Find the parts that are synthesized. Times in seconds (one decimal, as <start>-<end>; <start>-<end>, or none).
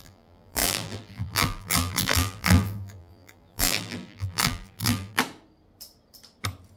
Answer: 0.0-5.2